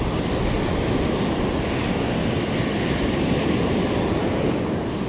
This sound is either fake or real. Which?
real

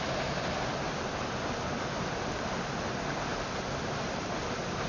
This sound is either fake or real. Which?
real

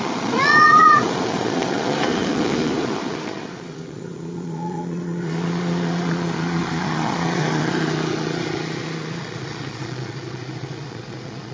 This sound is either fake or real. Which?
fake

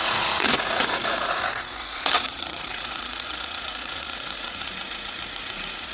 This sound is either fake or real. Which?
fake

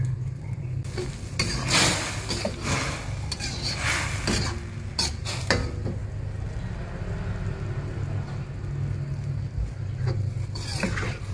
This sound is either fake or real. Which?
real